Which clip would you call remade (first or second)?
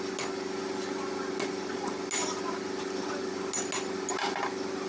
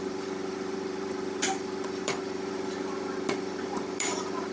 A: second